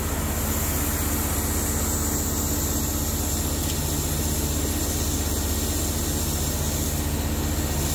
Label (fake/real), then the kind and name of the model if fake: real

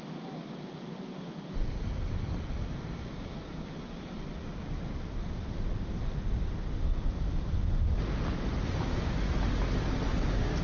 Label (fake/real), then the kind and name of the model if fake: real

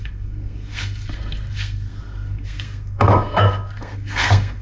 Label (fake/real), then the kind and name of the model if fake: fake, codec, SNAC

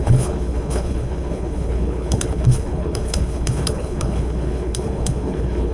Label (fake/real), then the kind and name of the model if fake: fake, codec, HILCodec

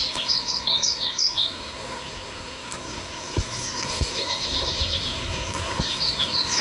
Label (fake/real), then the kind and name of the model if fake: fake, codec, SNAC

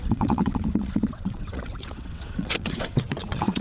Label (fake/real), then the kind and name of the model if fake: fake, vocoder, WaveNeXt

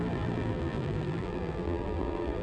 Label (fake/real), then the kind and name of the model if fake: fake, vocoder, BigVGAN v2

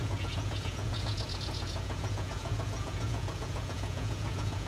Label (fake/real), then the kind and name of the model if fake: fake, vocoder, Vocos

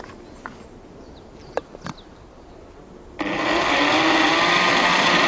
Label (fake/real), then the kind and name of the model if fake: real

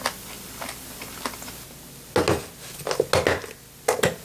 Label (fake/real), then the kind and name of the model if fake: real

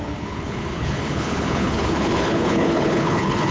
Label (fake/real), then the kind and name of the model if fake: fake, codec, HILCodec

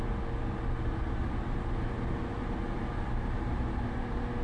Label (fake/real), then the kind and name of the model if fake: real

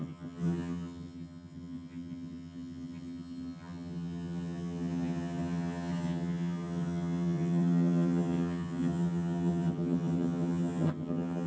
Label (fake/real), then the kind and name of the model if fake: fake, vocoder, HiFi-GAN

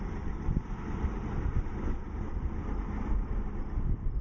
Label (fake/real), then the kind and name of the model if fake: real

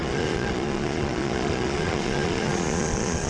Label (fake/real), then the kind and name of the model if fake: fake, vocoder, Vocos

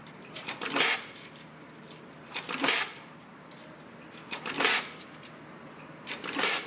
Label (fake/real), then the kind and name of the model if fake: real